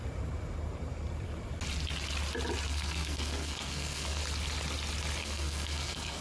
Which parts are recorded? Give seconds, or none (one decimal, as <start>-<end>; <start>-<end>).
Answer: 0.0-2.7; 4.2-5.2